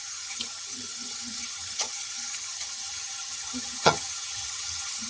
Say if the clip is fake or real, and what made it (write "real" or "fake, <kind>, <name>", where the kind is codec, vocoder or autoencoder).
fake, vocoder, HiFi-GAN